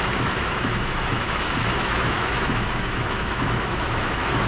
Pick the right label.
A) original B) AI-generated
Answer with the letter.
B